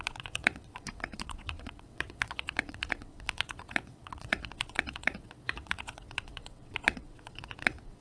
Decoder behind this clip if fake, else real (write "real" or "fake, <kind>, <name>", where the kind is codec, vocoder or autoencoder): fake, vocoder, WaveNeXt